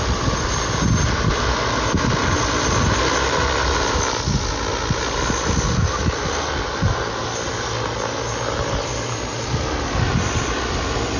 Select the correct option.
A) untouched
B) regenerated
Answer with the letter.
A